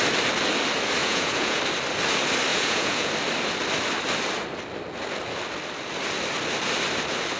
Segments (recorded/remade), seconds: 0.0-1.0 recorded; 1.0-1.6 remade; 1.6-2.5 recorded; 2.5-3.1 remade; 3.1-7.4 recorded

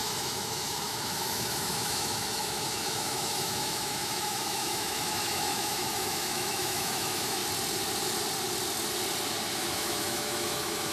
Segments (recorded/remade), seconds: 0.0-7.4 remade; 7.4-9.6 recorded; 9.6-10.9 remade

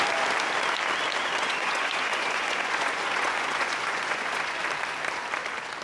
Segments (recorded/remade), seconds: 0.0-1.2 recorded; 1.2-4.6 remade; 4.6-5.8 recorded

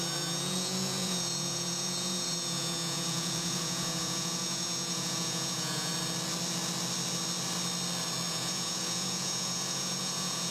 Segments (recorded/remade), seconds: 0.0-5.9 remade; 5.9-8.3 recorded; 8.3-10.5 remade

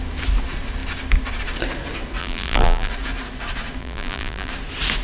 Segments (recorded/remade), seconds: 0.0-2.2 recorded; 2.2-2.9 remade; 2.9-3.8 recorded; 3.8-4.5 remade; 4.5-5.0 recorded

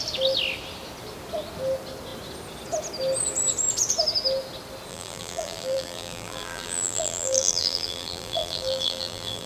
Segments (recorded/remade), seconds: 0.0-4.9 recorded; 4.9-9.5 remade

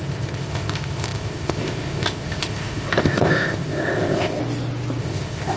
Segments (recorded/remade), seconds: 0.0-4.4 remade; 4.4-5.0 recorded; 5.0-5.6 remade

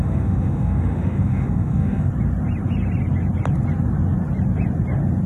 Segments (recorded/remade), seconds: 0.0-2.1 remade; 2.1-5.3 recorded